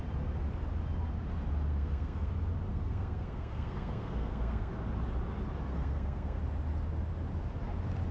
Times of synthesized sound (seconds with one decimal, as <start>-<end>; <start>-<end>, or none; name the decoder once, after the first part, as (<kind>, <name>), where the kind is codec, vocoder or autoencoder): 1.7-2.3 (codec, SNAC); 2.7-4.7; 5.7-6.4